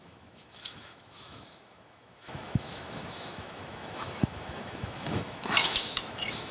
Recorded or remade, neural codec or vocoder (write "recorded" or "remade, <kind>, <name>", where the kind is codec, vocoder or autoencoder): remade, autoencoder, DAC-VAE